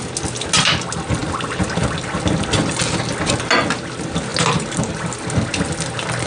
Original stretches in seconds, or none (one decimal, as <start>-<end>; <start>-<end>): 0.0-6.3